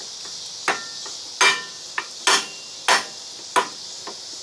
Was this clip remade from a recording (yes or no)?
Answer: no